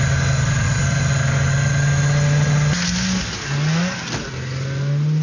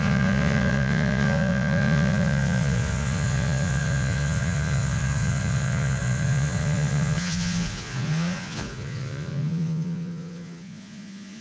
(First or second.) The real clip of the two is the first